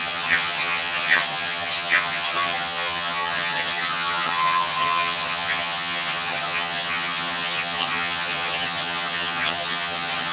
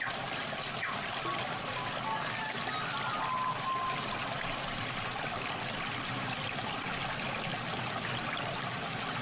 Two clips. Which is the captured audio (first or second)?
second